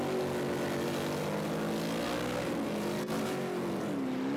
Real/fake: real